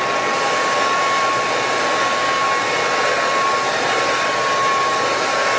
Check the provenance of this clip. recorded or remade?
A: recorded